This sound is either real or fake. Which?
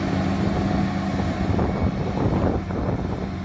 real